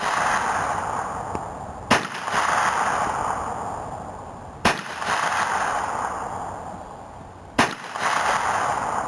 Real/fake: real